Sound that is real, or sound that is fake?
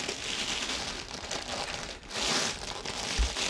real